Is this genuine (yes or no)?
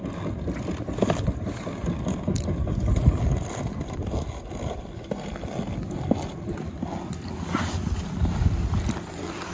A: yes